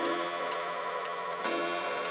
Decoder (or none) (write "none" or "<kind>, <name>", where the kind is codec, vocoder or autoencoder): vocoder, Vocos